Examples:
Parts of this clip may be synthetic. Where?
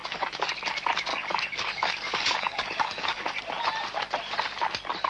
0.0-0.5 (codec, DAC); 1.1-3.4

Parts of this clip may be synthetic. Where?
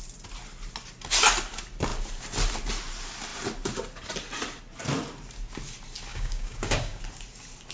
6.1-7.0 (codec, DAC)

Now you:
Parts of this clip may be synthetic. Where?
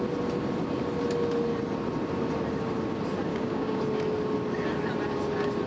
3.3-3.8 (codec, DAC)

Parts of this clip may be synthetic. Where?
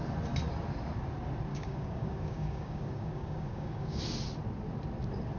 1.5-4.0 (codec, DAC)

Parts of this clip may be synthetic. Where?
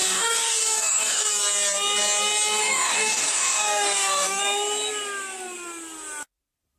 0.0-1.3 (codec, DAC); 2.6-4.4